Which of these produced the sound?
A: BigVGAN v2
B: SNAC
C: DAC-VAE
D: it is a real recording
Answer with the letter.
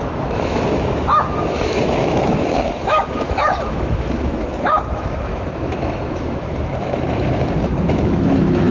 C